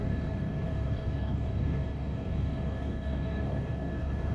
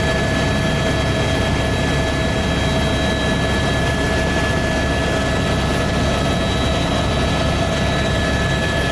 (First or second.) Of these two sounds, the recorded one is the second